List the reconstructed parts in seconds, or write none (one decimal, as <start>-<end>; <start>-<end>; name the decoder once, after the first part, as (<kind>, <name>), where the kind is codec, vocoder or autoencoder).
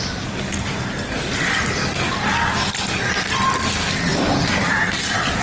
4.1-5.4 (vocoder, BigVGAN v2)